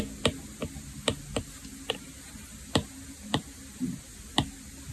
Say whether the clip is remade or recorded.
recorded